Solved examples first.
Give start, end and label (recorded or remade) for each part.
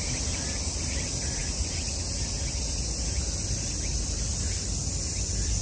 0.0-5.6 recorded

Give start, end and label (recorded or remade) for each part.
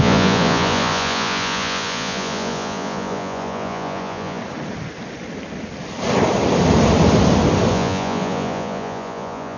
0.0-4.4 remade; 4.4-7.7 recorded; 7.7-9.6 remade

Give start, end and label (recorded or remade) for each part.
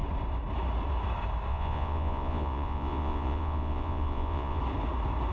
0.0-1.5 recorded; 1.5-4.6 remade; 4.6-5.3 recorded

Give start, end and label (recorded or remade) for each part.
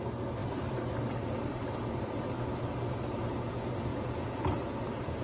0.0-3.9 recorded; 3.9-4.4 remade; 4.4-5.2 recorded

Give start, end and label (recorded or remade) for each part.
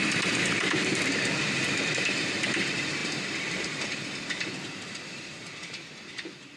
0.0-6.6 recorded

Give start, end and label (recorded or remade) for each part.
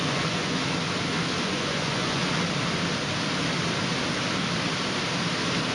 0.0-0.6 remade; 0.6-1.4 recorded; 1.4-2.2 remade; 2.2-5.7 recorded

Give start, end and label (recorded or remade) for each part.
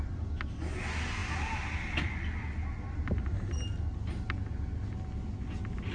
0.0-5.9 recorded